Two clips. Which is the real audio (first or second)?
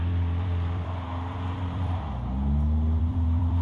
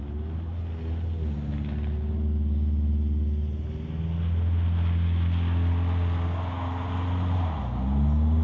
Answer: second